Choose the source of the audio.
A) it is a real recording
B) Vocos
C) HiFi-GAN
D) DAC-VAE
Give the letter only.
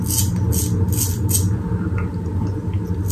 A